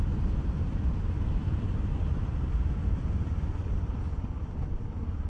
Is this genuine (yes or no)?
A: yes